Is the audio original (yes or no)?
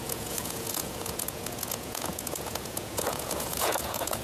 no